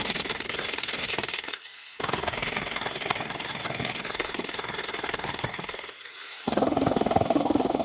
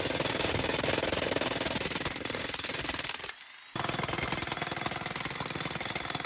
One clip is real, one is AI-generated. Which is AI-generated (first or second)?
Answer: first